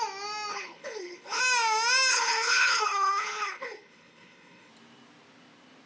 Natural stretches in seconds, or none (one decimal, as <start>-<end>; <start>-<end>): 0.0-0.5; 1.4-2.1; 4.7-5.9